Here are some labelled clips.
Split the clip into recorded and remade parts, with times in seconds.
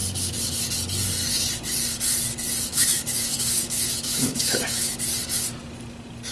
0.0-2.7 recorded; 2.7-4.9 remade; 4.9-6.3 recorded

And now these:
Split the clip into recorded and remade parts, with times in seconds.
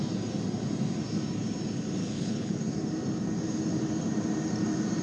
0.0-2.0 recorded; 2.0-2.6 remade; 2.6-5.0 recorded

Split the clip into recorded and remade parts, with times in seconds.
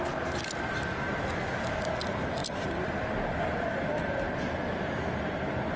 0.0-2.4 recorded; 2.4-5.8 remade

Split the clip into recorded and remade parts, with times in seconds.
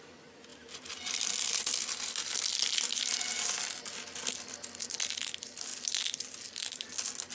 0.0-7.3 recorded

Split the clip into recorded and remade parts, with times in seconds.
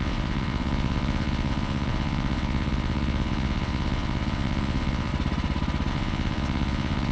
0.0-5.1 remade; 5.1-5.9 recorded; 5.9-7.1 remade